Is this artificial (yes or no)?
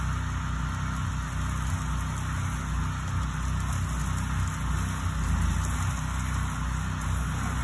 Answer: no